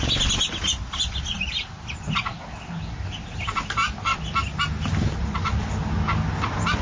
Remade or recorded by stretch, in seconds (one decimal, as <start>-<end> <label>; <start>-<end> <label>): 0.0-6.8 recorded